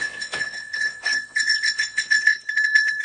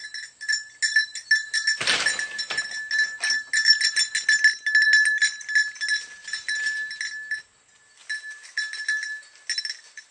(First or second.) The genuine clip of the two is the second